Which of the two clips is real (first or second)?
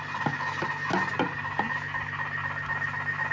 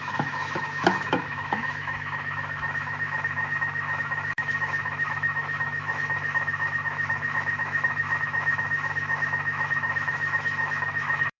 first